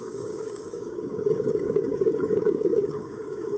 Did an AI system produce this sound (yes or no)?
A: yes